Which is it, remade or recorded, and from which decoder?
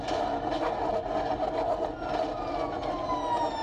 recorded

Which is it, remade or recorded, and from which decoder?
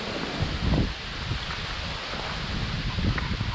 recorded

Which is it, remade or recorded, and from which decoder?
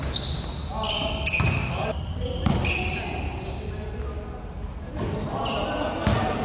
recorded